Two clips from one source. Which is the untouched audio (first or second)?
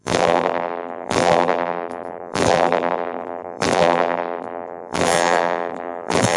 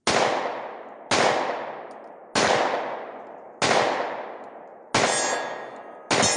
second